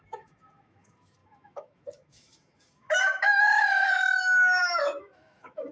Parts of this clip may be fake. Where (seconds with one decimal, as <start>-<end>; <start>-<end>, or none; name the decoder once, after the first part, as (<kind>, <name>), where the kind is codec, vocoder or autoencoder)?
0.0-5.7 (autoencoder, DAC-VAE)